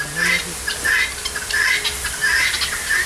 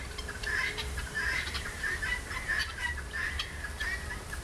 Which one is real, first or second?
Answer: first